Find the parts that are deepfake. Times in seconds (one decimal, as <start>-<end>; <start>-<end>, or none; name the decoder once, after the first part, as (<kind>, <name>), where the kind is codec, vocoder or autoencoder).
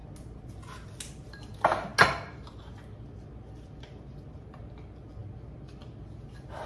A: 5.2-6.7 (vocoder, BigVGAN v2)